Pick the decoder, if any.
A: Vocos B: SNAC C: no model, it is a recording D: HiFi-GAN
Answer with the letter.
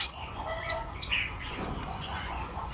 A